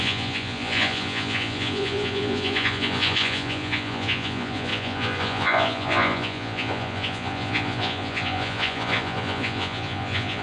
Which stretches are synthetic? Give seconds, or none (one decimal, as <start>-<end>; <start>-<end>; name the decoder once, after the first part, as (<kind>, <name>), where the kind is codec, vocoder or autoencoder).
0.0-10.4 (vocoder, Vocos)